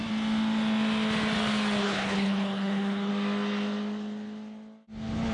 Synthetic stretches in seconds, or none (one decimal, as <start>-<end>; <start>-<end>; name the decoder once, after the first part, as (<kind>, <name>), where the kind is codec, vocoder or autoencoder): 1.8-3.1 (codec, HILCodec)